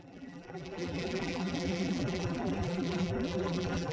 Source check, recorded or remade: remade